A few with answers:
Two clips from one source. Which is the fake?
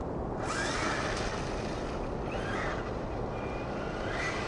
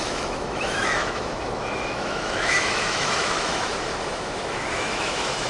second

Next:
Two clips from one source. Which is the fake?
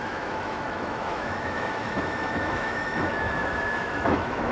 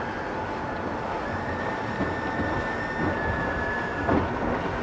first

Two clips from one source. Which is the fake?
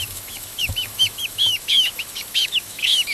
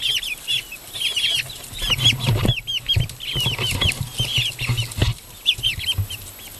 first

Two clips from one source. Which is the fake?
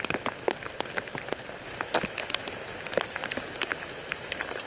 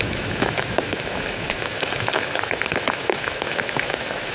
second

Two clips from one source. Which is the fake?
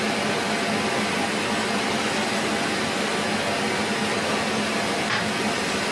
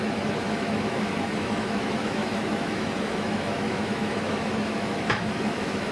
second